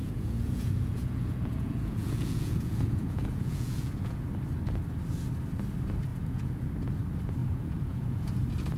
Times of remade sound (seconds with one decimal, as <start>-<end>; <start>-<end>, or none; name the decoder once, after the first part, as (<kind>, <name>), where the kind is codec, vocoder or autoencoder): 0.0-4.3 (vocoder, Vocos); 6.1-6.7; 7.4-8.3